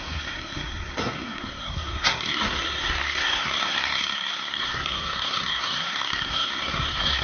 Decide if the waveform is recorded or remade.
remade